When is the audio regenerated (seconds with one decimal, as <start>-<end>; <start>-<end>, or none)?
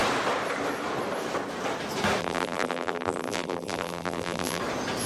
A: 2.2-4.6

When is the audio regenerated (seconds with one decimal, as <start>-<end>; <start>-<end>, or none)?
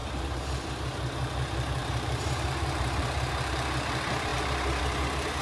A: 0.0-5.4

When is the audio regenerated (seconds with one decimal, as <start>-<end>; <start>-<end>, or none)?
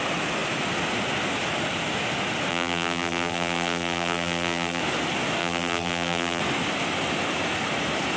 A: 2.5-4.8; 5.4-6.4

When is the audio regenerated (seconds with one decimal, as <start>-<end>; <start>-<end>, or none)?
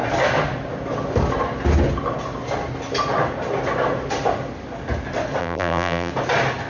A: 5.4-6.1